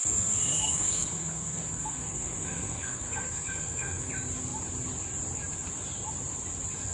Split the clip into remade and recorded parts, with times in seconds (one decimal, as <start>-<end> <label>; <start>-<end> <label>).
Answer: 0.0-4.1 remade; 4.1-6.9 recorded

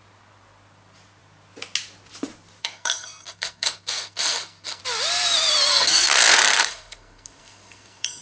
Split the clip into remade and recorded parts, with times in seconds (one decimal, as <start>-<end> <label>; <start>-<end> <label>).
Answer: 0.0-2.6 recorded; 2.6-4.8 remade; 4.8-5.7 recorded; 5.7-8.2 remade